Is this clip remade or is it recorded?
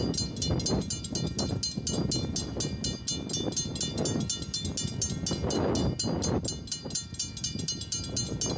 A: recorded